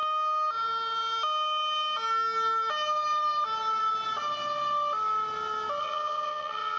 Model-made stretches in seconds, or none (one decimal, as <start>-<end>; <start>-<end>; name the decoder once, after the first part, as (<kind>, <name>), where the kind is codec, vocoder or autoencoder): 5.8-6.8 (vocoder, HiFi-GAN)

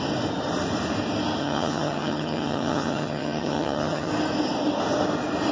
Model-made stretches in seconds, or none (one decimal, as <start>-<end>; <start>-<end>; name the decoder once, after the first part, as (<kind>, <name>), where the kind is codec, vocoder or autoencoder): 1.4-4.1 (vocoder, HiFi-GAN)

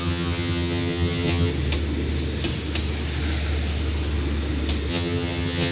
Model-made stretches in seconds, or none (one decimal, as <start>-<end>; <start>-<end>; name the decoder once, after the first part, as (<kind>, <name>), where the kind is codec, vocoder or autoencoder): 0.0-1.5 (vocoder, HiFi-GAN); 4.9-5.7